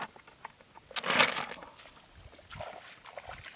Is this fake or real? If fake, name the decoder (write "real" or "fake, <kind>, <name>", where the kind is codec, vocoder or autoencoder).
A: real